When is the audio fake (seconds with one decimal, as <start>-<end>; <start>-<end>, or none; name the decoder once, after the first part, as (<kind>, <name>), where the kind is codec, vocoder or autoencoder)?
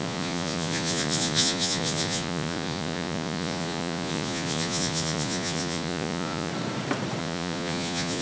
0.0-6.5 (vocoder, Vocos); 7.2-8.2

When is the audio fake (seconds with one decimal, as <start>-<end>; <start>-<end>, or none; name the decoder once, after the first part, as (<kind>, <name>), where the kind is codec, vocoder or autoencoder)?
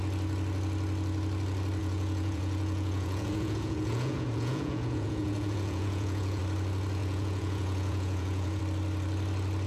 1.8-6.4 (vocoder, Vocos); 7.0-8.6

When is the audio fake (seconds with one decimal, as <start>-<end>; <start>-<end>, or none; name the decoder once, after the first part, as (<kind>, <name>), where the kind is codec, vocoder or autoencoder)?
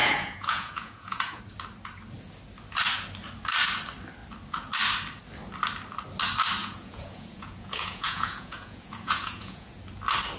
0.0-1.4 (vocoder, Vocos); 6.6-9.8